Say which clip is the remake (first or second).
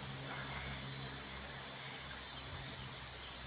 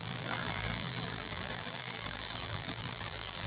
second